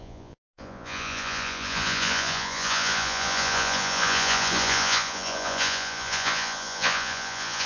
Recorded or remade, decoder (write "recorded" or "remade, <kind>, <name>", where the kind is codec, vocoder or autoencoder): remade, vocoder, Vocos